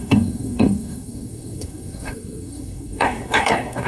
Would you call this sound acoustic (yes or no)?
no